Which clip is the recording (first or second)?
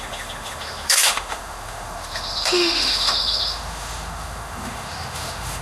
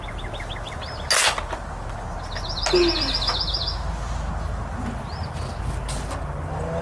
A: second